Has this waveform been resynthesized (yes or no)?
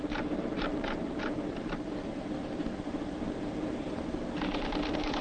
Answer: yes